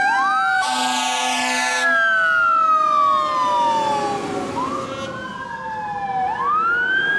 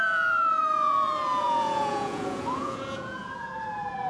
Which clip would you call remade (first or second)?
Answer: second